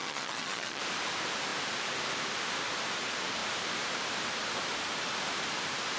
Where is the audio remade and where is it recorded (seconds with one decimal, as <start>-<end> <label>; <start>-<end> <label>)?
0.0-0.8 remade; 0.8-6.0 recorded